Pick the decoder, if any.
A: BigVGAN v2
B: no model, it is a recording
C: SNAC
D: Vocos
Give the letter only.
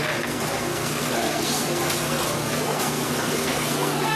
C